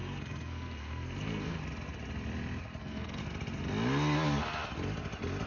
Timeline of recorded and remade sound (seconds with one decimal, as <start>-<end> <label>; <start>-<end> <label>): 0.0-1.6 remade; 1.6-2.8 recorded; 2.8-3.2 remade; 3.2-5.5 recorded